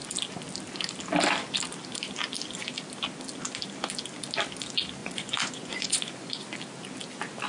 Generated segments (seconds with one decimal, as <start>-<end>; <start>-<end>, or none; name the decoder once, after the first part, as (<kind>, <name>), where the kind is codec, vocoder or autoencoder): 5.0-6.3 (vocoder, Vocos)